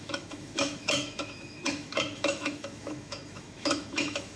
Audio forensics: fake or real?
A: fake